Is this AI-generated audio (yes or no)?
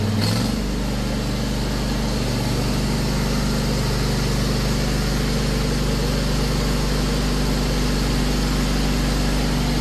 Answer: no